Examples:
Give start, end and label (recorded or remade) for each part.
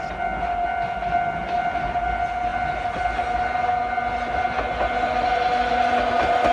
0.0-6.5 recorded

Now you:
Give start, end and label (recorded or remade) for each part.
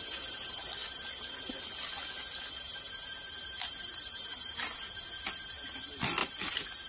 0.0-6.9 recorded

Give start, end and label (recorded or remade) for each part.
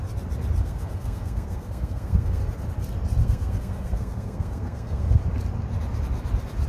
0.0-0.6 recorded; 0.6-2.4 remade; 2.4-3.2 recorded; 3.2-5.2 remade; 5.2-6.7 recorded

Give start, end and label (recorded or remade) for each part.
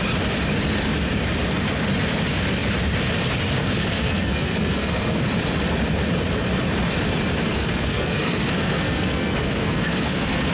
0.0-3.6 recorded; 3.6-5.2 remade; 5.2-7.5 recorded; 7.5-10.5 remade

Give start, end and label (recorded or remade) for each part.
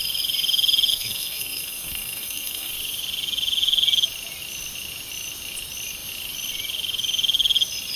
0.0-0.9 recorded; 0.9-2.7 remade; 2.7-8.0 recorded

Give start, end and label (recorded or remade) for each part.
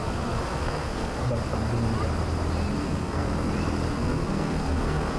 0.0-1.3 remade; 1.3-2.7 recorded; 2.7-3.5 remade; 3.5-3.9 recorded; 3.9-5.2 remade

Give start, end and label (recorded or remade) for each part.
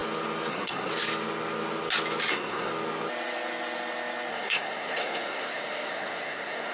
0.0-0.5 recorded; 0.5-0.9 remade; 0.9-2.3 recorded; 2.3-2.7 remade; 2.7-4.3 recorded; 4.3-6.7 remade